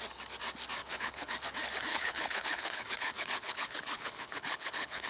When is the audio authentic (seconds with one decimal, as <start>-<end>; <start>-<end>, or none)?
0.0-0.8; 1.3-1.9